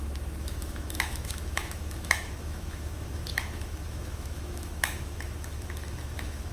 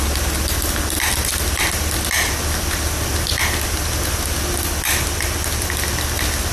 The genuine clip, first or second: second